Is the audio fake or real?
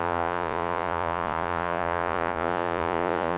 fake